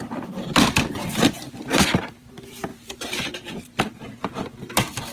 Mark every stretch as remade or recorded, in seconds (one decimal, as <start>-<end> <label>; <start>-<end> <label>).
0.0-5.1 remade

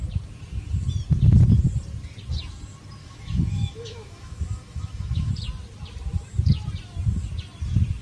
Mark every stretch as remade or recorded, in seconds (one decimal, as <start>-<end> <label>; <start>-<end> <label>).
0.0-3.0 recorded; 3.0-5.3 remade; 5.3-8.0 recorded